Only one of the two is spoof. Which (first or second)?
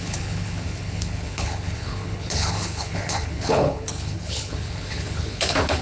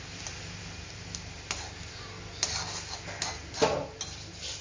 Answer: first